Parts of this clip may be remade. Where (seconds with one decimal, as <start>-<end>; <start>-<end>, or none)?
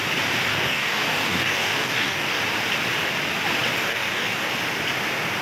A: 0.5-2.4; 3.8-4.5